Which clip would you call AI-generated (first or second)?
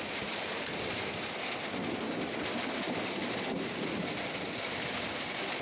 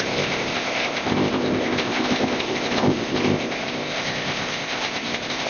second